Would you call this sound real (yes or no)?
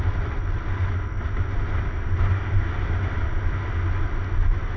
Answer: yes